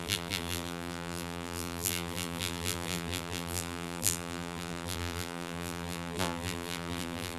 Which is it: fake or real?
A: fake